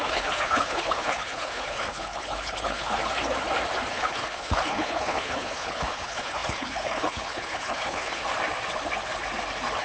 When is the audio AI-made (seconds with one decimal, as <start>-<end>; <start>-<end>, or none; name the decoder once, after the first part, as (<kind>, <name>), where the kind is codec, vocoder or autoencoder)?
0.0-3.0 (codec, HILCodec); 3.9-8.2